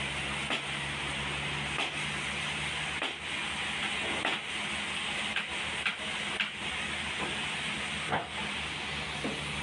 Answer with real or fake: real